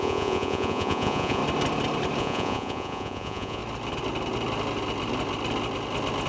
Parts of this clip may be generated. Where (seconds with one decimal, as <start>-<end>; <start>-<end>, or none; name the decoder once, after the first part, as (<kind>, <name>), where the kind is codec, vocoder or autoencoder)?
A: 0.0-1.4 (vocoder, Vocos); 2.2-3.6